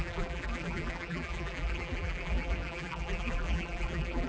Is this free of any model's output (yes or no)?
no